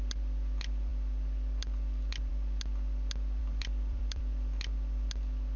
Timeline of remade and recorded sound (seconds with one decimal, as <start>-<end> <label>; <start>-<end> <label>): 0.0-3.4 recorded; 3.4-4.2 remade; 4.2-5.6 recorded